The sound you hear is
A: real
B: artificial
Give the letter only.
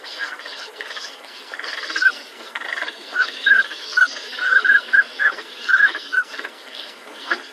B